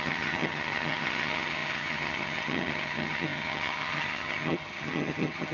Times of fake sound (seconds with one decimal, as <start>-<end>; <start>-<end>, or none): 0.0-5.5